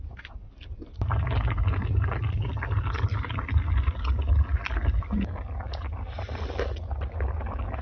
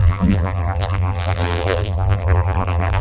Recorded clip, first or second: first